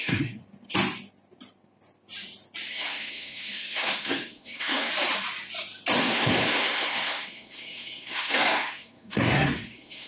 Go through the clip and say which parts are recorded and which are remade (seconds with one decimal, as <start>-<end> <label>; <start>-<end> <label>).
0.0-0.4 remade; 0.4-2.7 recorded; 2.7-4.9 remade; 4.9-6.0 recorded; 6.0-10.1 remade